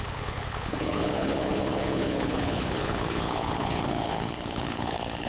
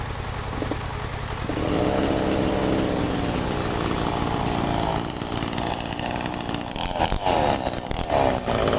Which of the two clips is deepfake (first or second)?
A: first